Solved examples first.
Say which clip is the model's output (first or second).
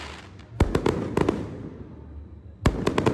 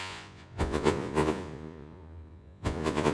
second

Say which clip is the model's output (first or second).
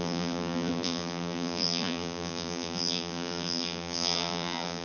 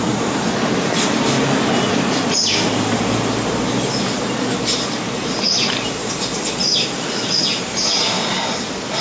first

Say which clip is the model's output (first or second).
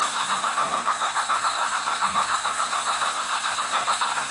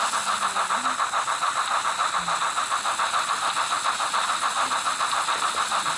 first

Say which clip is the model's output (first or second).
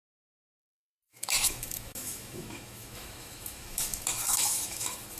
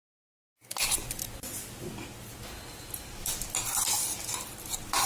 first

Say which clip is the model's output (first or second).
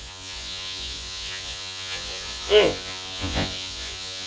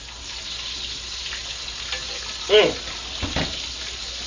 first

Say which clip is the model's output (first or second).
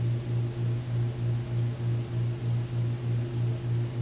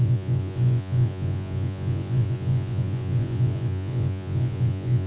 second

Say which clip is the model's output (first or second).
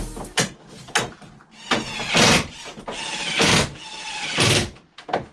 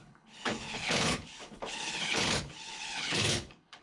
second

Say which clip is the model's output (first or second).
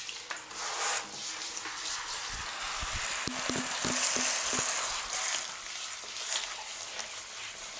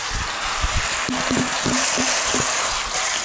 second